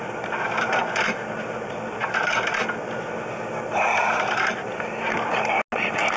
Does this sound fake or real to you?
real